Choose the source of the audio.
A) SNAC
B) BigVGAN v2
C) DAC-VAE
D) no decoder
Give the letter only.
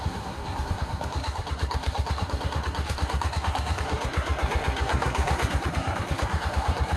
A